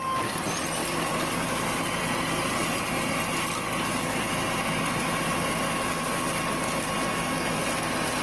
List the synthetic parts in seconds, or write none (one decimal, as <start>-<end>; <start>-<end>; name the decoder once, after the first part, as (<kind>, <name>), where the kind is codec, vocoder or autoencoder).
none